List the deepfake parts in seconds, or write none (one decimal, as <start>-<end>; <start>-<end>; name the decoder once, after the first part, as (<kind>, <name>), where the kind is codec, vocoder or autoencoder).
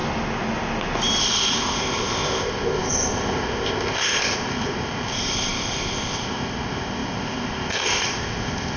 1.2-8.8 (codec, ZipCodec)